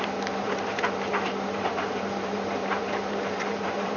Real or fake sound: fake